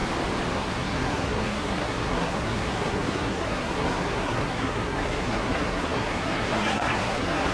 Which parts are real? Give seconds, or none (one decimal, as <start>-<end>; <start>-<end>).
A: 0.0-0.5